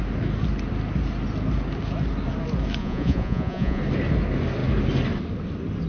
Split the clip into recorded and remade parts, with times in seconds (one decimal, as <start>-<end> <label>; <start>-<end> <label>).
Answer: 0.0-2.8 recorded; 2.8-3.8 remade; 3.8-5.9 recorded